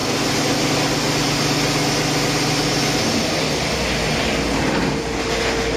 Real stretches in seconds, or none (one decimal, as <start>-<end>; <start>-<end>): 0.0-5.8